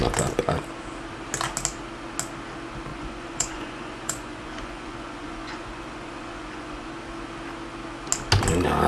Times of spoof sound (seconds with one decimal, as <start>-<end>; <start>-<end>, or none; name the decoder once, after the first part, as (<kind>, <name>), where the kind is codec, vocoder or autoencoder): 2.9-6.9 (vocoder, Vocos)